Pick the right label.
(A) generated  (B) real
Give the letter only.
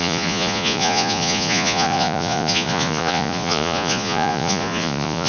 A